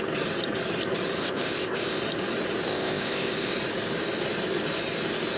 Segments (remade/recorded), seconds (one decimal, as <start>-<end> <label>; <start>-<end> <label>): 0.0-1.2 recorded; 1.2-2.0 remade; 2.0-2.7 recorded; 2.7-3.5 remade; 3.5-5.4 recorded